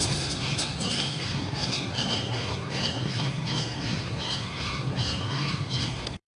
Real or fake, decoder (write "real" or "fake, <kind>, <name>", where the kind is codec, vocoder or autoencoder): fake, codec, SNAC